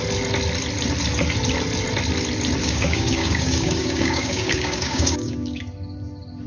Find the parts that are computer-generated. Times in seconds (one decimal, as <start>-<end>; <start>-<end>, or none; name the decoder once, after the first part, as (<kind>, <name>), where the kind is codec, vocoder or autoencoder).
2.6-5.6 (codec, DAC)

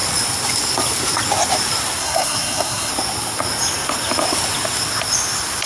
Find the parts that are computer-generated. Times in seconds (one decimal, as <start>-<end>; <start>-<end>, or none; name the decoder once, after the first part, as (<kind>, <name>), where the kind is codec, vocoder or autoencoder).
2.0-2.9 (codec, SNAC)

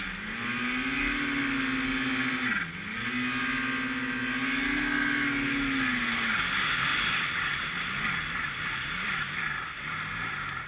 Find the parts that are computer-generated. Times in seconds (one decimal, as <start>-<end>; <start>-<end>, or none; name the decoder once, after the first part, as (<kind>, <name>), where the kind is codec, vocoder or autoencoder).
6.9-9.2 (vocoder, BigVGAN v2)